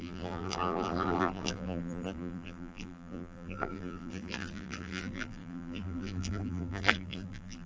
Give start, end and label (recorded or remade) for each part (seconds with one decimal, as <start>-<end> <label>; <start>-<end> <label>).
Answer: 0.0-7.7 remade